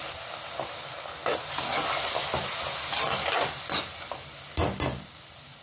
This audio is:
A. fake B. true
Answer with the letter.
B